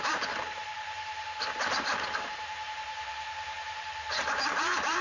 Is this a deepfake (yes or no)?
yes